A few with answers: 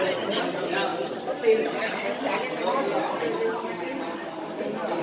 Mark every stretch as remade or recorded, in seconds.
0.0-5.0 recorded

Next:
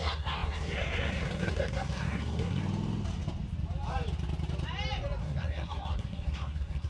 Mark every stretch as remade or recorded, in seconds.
0.0-2.6 remade; 2.6-5.2 recorded; 5.2-6.9 remade